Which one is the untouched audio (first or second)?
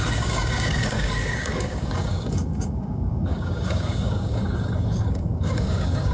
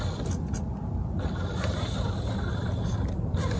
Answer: second